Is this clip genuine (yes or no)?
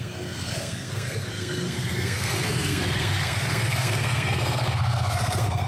no